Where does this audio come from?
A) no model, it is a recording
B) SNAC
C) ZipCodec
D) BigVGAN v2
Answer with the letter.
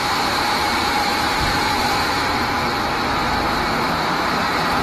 D